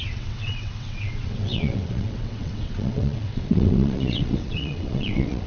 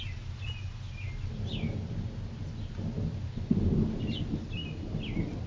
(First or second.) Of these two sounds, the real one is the second